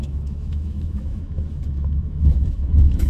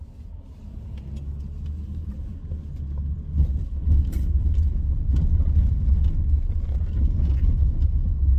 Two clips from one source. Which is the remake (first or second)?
first